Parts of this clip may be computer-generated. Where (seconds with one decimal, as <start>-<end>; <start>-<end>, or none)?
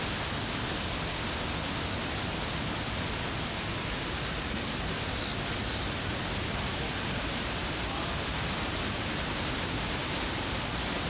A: 2.3-4.7; 6.1-9.3